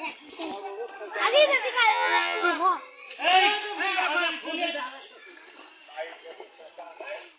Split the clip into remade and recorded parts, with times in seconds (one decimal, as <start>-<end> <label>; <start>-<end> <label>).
0.0-1.9 recorded; 1.9-2.5 remade; 2.5-7.4 recorded